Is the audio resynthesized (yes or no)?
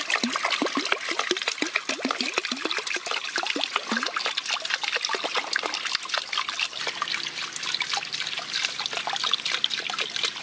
no